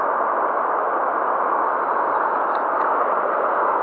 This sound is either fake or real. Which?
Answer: real